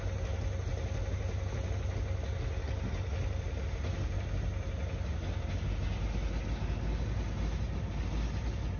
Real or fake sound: real